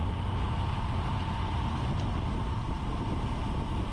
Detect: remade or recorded recorded